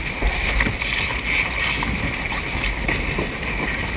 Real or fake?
real